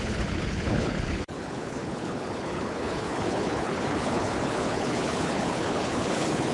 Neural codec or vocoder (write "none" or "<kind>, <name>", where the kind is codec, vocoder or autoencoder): codec, HILCodec